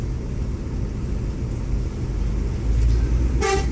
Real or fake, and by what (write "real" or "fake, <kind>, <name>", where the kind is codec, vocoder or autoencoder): real